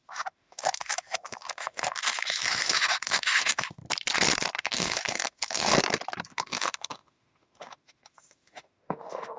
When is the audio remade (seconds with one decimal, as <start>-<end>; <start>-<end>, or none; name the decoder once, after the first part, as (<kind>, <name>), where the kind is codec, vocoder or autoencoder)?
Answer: 0.0-3.8 (autoencoder, DAC-VAE); 4.6-5.7; 6.3-9.4

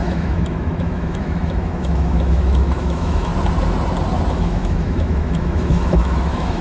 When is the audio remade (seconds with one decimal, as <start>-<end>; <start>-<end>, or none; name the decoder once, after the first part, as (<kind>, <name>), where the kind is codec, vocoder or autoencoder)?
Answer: 0.0-3.3 (autoencoder, DAC-VAE); 4.3-6.6

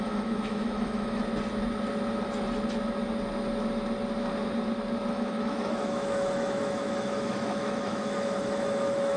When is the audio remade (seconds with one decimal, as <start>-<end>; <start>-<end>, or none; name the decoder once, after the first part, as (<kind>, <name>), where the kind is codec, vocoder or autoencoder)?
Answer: 0.0-1.2 (autoencoder, DAC-VAE); 5.1-9.2

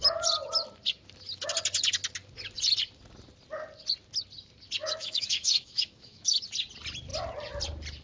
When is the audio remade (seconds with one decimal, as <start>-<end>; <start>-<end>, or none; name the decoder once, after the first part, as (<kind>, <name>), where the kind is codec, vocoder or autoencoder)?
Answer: 4.8-6.4 (autoencoder, DAC-VAE)

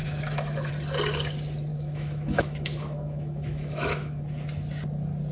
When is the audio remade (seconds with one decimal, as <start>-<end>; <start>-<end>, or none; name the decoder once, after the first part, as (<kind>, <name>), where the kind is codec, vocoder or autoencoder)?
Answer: 0.0-0.7 (autoencoder, DAC-VAE); 1.7-4.2